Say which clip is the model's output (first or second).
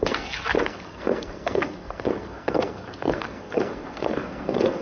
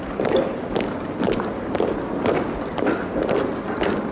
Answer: first